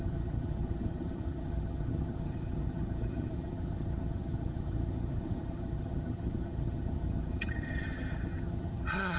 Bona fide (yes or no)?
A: no